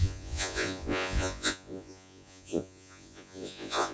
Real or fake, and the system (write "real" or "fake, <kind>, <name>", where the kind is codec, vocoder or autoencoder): fake, vocoder, Vocos